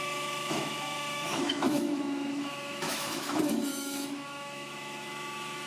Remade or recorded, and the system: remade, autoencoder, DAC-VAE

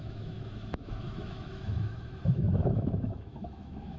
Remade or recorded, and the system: remade, autoencoder, DAC-VAE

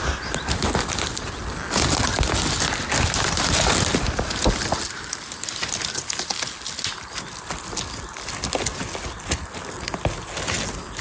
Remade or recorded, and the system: recorded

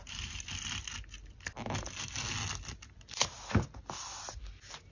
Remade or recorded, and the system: recorded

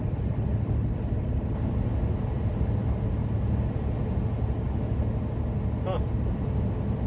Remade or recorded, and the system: recorded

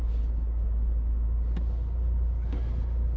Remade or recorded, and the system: recorded